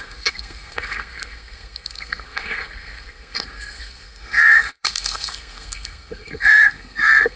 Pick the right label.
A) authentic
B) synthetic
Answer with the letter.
B